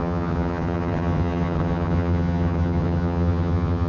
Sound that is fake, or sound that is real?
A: fake